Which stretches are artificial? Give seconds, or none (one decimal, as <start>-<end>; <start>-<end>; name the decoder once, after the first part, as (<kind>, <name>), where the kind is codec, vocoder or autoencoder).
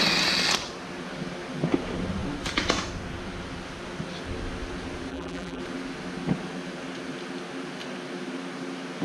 5.1-5.6 (vocoder, BigVGAN v2)